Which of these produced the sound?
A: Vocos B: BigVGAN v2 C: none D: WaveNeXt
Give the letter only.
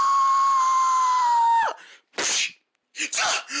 C